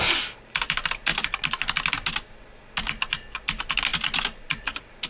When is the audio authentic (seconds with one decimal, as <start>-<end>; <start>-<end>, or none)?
0.0-5.1